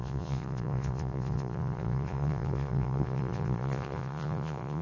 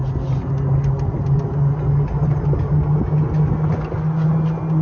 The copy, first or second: first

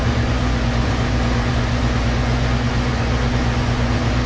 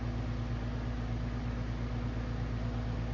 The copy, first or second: first